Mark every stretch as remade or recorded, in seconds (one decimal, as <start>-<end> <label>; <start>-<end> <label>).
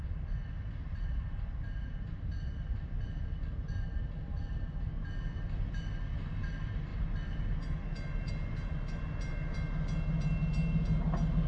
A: 0.0-11.5 recorded